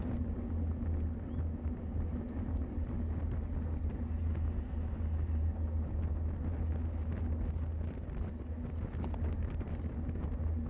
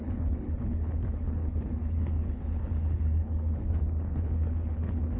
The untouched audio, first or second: first